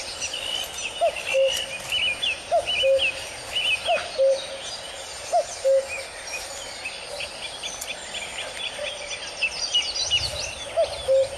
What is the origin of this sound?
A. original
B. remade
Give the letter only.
A